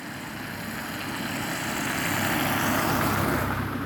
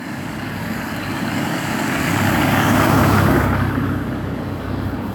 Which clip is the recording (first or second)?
first